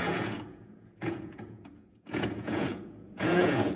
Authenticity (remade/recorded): remade